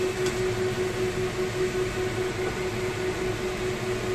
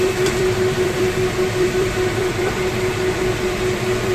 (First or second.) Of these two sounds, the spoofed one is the second